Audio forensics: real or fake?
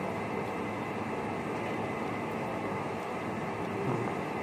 real